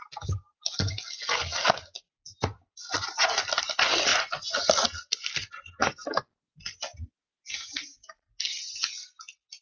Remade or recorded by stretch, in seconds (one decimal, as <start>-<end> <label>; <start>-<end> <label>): 0.0-9.6 recorded